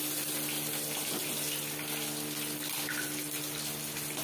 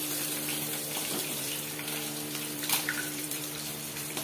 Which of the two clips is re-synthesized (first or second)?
second